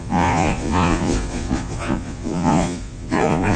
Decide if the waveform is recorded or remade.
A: remade